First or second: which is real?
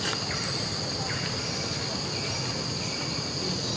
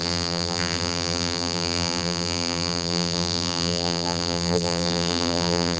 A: first